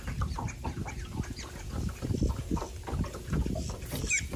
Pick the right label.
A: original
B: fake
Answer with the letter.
A